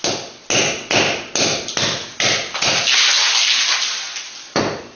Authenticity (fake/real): real